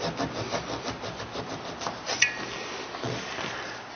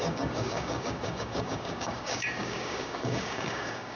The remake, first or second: second